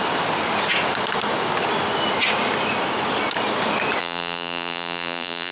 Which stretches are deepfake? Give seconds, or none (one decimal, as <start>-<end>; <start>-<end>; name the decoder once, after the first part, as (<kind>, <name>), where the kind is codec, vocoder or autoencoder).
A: 4.0-5.5 (vocoder, BigVGAN v2)